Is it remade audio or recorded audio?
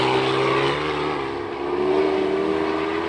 recorded